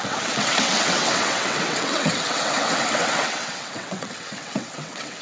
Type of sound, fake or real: fake